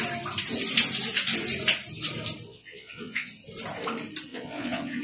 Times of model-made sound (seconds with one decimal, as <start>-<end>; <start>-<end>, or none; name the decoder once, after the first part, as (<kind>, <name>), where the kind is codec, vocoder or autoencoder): 2.5-3.3 (vocoder, Vocos); 4.3-5.0